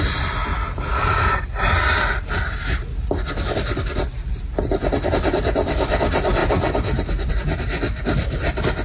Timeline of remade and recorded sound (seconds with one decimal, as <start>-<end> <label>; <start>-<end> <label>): 0.0-8.8 recorded